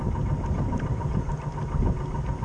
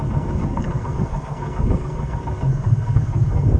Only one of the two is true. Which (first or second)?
first